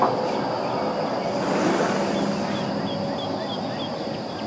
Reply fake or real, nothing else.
real